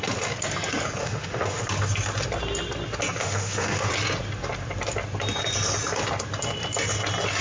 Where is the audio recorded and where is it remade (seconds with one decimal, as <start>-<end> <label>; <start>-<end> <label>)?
0.0-1.0 recorded; 1.0-1.6 remade; 1.6-3.2 recorded; 3.2-3.9 remade; 3.9-7.4 recorded